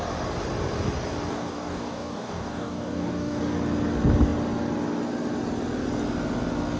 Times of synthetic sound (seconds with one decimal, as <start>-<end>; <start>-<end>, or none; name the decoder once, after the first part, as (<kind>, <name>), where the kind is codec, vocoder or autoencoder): 1.3-3.4 (codec, DAC)